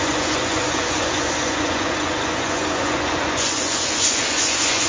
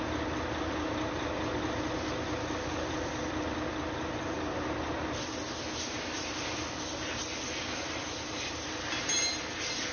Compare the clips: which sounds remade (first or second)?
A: first